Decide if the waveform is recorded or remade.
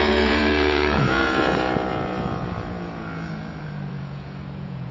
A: remade